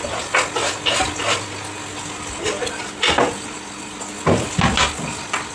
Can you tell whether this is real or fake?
real